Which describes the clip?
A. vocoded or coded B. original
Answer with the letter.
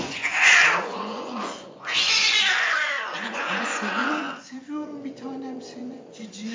A